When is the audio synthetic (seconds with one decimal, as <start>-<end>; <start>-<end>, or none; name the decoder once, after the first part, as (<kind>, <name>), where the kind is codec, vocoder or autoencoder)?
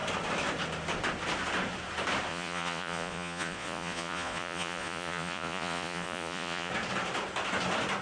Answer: 2.3-6.7 (vocoder, Vocos)